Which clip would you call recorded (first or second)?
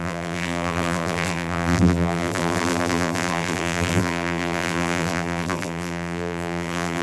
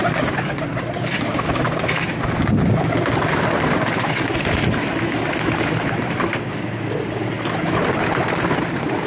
second